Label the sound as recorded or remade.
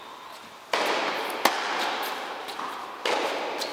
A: recorded